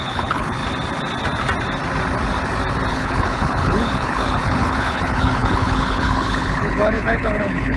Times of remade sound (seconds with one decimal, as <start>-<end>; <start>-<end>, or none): 0.0-0.6; 2.9-7.8